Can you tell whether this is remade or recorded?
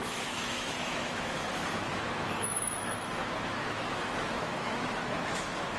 remade